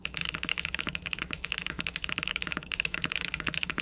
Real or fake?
fake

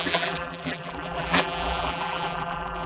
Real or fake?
fake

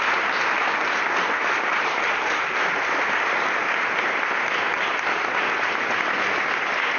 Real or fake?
real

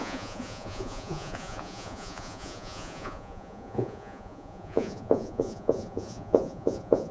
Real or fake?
fake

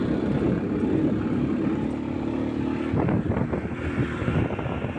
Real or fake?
real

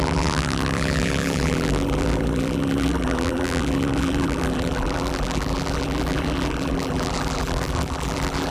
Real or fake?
fake